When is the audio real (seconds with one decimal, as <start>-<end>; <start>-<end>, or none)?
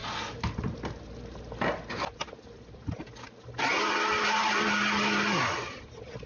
0.0-6.3